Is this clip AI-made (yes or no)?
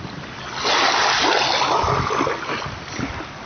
no